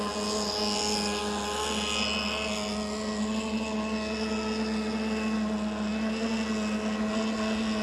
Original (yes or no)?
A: yes